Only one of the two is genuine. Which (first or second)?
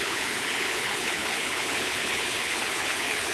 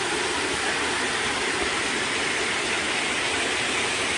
second